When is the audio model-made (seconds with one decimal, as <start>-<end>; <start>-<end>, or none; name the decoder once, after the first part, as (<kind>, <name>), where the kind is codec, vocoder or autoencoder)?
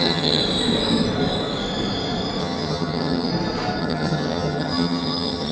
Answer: 0.0-0.4 (vocoder, HiFi-GAN); 2.4-3.3; 3.8-5.5